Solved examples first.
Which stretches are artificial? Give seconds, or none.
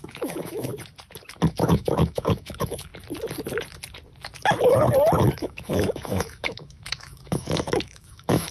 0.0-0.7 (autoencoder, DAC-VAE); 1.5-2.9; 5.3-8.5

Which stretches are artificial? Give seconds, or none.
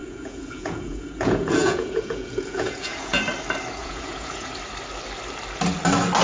0.0-3.2 (vocoder, Vocos); 3.8-4.5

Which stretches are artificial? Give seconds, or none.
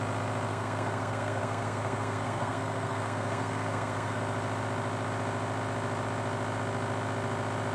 0.5-4.2 (codec, SNAC)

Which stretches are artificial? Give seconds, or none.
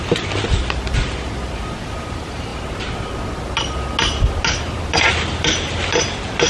none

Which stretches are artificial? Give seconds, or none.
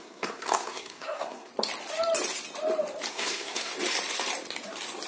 0.0-1.5 (codec, SNAC); 3.1-3.7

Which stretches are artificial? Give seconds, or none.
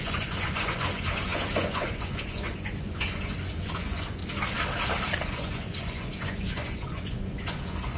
0.0-4.2 (vocoder, Vocos); 5.2-8.0